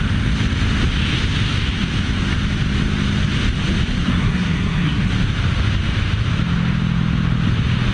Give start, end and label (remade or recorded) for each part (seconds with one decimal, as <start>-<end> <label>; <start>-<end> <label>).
0.0-4.0 recorded; 4.0-5.1 remade; 5.1-7.9 recorded